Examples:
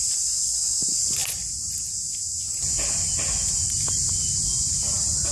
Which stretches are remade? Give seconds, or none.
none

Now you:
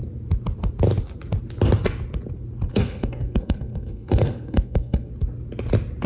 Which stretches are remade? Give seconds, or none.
2.7-5.1 (codec, SNAC)